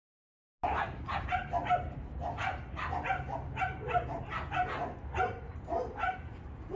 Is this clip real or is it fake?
real